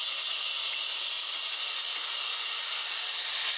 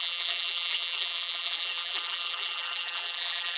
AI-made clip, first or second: second